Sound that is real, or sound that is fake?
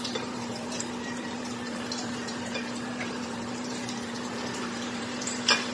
fake